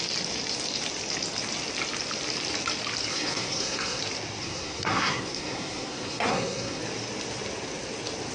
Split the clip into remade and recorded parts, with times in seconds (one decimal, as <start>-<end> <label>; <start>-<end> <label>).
0.0-3.1 recorded; 3.1-4.0 remade; 4.0-4.4 recorded; 4.4-6.8 remade; 6.8-8.3 recorded

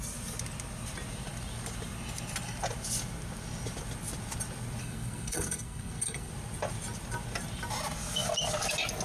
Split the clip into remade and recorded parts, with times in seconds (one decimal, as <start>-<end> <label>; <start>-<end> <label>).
0.0-4.8 recorded; 4.8-6.3 remade; 6.3-9.0 recorded

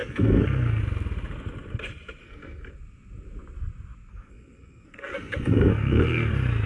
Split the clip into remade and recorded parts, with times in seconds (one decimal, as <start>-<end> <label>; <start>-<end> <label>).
0.0-0.8 remade; 0.8-2.2 recorded; 2.2-2.7 remade; 2.7-4.1 recorded; 4.1-6.3 remade; 6.3-6.7 recorded

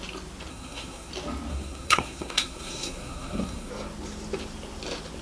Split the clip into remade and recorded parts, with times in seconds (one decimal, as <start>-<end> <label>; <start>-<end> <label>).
0.0-0.5 recorded; 0.5-1.1 remade; 1.1-1.5 recorded; 1.5-3.7 remade; 3.7-5.2 recorded

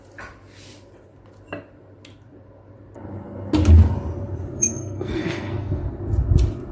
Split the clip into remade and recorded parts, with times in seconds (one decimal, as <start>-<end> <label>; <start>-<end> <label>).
0.0-4.6 recorded; 4.6-5.9 remade; 5.9-6.7 recorded

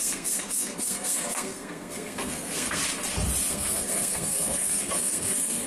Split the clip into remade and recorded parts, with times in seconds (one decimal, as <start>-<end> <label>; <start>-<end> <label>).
0.0-2.8 remade; 2.8-3.5 recorded; 3.5-5.7 remade

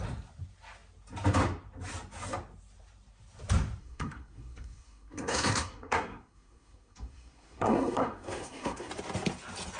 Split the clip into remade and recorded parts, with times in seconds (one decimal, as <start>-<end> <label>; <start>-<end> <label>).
0.0-3.8 recorded; 3.8-8.9 remade; 8.9-9.8 recorded